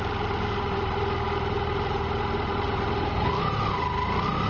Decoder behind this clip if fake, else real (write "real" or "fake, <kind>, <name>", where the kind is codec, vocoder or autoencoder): real